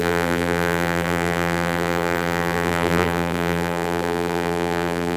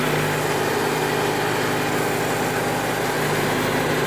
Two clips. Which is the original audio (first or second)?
second